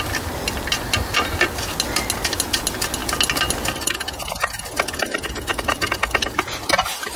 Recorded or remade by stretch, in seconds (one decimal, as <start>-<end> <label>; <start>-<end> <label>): 0.0-7.2 recorded